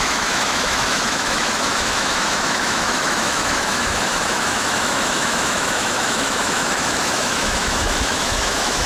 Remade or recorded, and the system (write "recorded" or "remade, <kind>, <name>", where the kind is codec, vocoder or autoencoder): remade, autoencoder, DAC-VAE